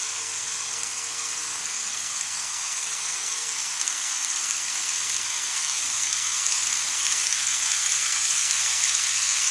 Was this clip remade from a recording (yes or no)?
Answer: yes